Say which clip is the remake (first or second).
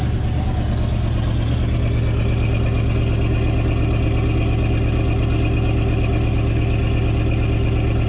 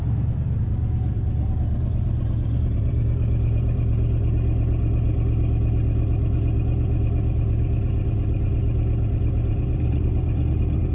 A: second